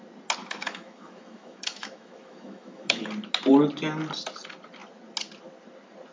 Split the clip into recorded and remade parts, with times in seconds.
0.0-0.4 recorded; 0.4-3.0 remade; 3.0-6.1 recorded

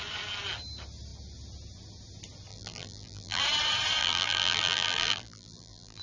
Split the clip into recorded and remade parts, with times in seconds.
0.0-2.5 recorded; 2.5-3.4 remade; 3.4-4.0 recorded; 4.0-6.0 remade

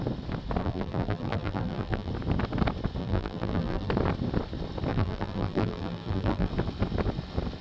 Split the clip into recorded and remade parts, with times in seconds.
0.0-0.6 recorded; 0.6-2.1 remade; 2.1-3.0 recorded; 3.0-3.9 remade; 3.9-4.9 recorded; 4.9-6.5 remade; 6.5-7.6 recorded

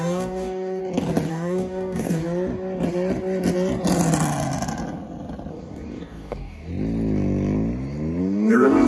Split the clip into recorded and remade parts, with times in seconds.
0.0-0.8 remade; 0.8-1.3 recorded; 1.3-2.2 remade; 2.2-5.5 recorded; 5.5-6.7 remade; 6.7-8.2 recorded; 8.2-8.9 remade

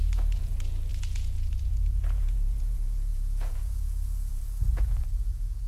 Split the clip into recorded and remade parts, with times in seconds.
0.0-5.7 remade

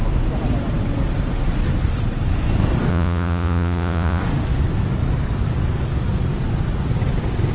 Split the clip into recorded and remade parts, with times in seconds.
0.0-2.9 recorded; 2.9-4.2 remade; 4.2-7.5 recorded

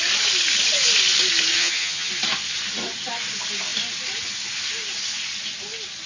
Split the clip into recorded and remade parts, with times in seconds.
0.0-1.5 recorded; 1.5-2.1 remade; 2.1-6.1 recorded

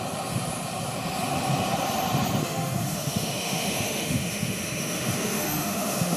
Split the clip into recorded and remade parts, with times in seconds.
0.0-2.4 recorded; 2.4-6.2 remade